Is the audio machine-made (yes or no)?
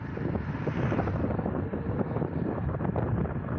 no